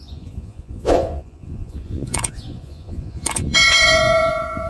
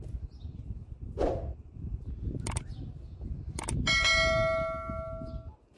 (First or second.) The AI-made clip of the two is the first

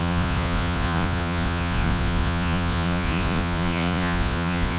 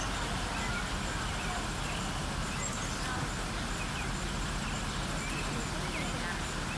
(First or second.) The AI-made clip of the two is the first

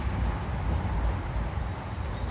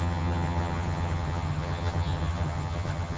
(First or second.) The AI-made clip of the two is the second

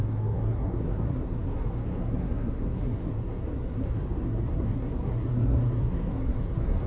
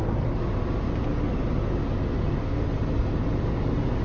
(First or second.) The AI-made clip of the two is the first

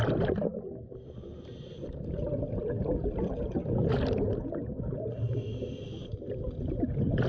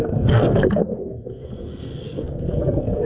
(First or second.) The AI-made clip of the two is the second